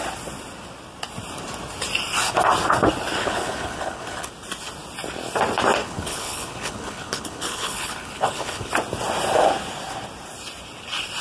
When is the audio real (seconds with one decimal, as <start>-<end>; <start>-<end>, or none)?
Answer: 0.0-3.2; 4.3-5.8; 8.7-11.2